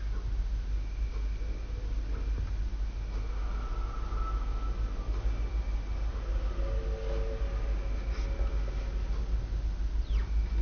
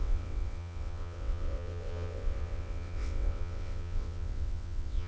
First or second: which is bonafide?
first